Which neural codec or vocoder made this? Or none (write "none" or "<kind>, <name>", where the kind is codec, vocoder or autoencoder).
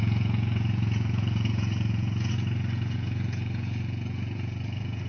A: vocoder, Vocos